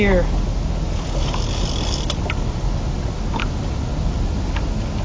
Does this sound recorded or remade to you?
recorded